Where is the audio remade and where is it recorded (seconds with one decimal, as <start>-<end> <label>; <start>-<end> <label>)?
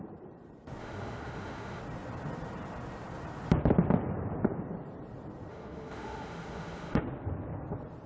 0.0-0.8 recorded; 0.8-1.8 remade; 1.8-5.5 recorded; 5.5-7.0 remade; 7.0-8.1 recorded